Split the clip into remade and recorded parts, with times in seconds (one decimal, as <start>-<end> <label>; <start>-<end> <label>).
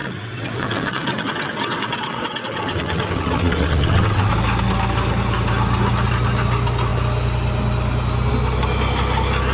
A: 0.0-4.3 remade; 4.3-9.5 recorded